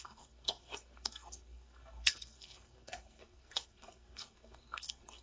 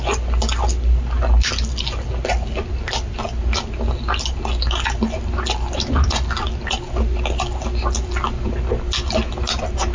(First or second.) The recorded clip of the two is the second